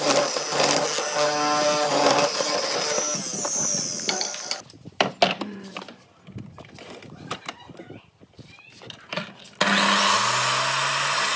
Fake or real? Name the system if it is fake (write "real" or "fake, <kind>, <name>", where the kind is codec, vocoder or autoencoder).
real